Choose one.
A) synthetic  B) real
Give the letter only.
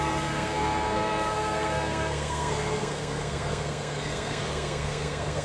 A